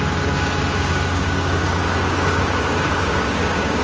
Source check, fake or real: fake